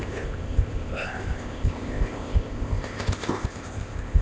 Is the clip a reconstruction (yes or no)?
yes